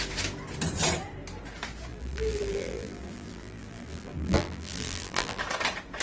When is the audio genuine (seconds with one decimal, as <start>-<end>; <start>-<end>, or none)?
0.0-1.9; 5.4-6.0